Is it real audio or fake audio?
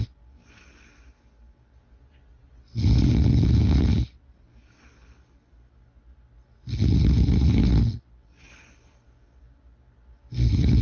real